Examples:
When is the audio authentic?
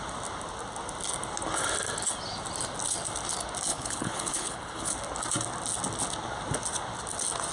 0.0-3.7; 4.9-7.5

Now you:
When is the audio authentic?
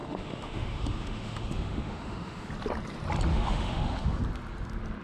2.5-3.3; 4.2-5.0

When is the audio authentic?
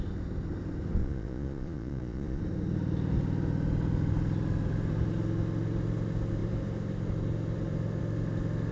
0.0-1.0; 2.4-8.7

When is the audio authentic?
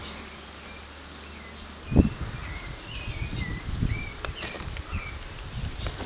0.0-2.4; 3.1-6.1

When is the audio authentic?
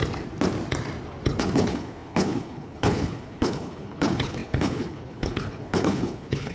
0.0-1.4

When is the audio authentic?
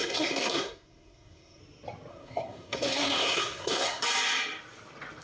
1.6-2.1; 4.0-5.2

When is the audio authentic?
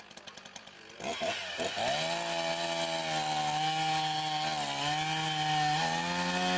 0.0-6.6